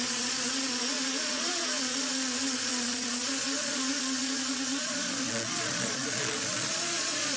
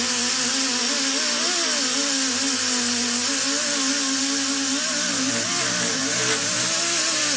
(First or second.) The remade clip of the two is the first